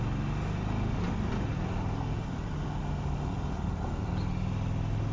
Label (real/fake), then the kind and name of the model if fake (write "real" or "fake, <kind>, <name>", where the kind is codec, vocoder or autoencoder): real